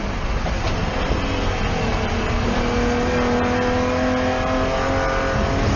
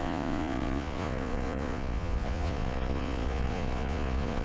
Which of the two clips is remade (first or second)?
second